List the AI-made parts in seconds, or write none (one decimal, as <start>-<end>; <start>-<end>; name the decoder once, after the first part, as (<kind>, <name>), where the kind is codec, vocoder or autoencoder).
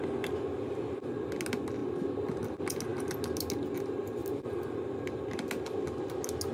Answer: 4.2-4.7 (vocoder, BigVGAN v2)